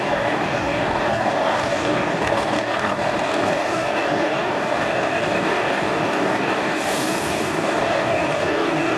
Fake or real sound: fake